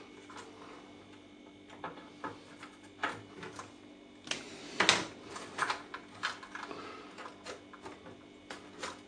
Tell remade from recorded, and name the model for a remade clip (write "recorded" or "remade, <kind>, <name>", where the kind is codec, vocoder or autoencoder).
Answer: recorded